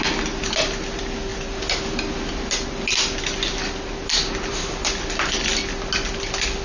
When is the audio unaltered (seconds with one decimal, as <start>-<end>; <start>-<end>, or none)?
0.0-6.6